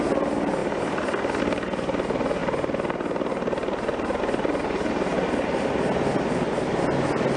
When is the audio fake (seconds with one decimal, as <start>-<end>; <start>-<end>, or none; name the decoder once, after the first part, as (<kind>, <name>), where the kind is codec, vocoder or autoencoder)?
none